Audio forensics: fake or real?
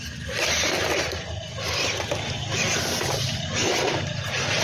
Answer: real